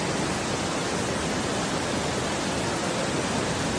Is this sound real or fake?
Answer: real